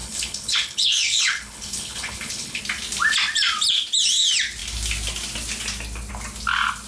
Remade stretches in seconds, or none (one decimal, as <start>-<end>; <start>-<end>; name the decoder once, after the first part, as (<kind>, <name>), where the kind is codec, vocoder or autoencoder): 0.0-2.6 (codec, HILCodec)